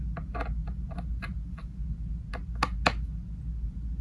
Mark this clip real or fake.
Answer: real